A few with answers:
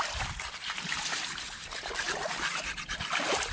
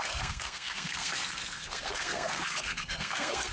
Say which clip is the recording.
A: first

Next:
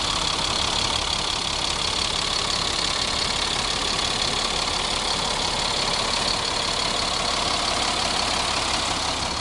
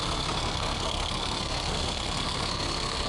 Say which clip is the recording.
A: first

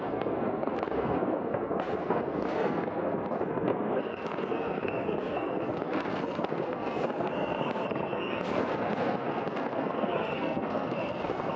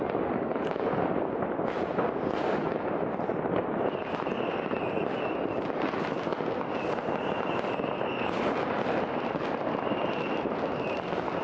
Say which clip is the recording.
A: second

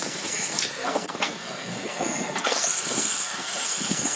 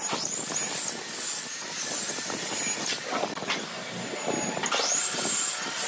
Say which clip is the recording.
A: second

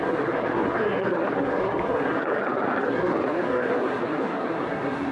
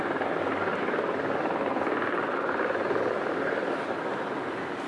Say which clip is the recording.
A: second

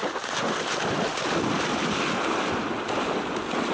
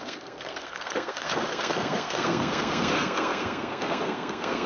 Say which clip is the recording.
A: first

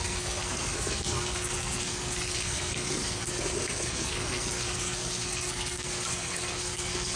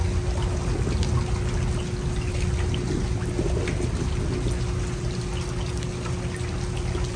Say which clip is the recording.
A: second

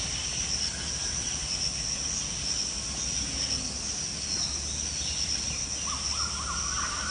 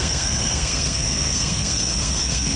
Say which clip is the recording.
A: first